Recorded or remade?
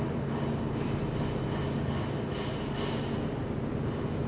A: recorded